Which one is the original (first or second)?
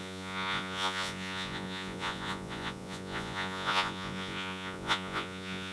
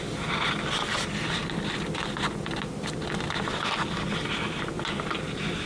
second